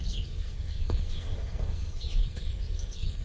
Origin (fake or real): fake